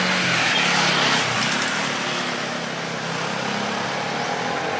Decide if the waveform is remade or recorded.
recorded